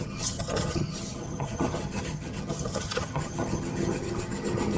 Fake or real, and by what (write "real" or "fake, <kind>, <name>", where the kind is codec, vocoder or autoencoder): fake, vocoder, HiFi-GAN